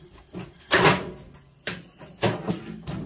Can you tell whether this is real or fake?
real